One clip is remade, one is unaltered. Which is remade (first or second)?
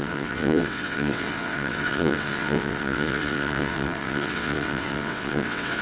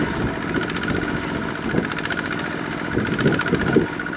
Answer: first